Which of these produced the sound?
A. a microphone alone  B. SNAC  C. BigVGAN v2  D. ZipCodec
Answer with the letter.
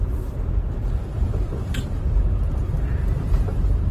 C